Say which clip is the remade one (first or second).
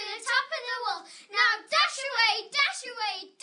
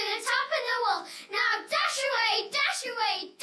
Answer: second